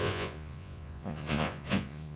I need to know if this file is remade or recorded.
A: remade